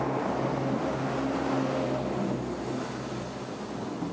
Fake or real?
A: real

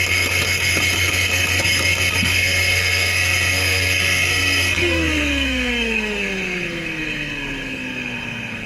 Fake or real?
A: fake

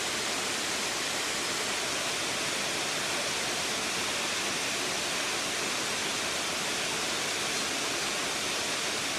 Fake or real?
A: real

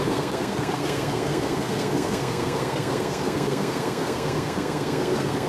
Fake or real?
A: fake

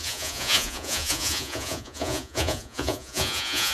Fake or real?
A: fake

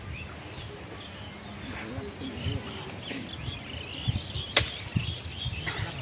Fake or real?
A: real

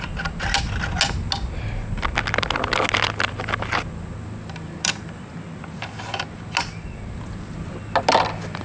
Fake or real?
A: real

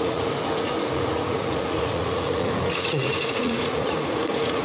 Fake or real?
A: fake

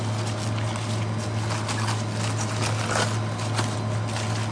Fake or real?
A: real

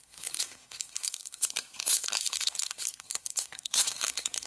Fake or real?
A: fake